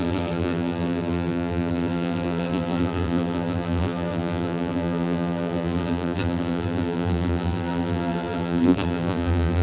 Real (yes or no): no